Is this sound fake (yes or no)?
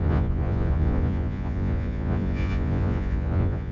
yes